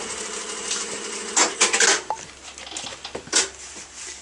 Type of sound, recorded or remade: recorded